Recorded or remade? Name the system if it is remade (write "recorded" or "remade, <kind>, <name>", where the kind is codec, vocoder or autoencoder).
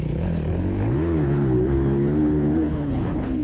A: remade, codec, HILCodec